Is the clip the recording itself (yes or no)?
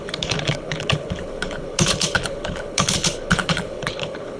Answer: no